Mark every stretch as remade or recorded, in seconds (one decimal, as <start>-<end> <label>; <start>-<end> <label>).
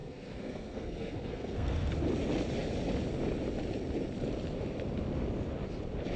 0.0-1.9 remade; 1.9-6.2 recorded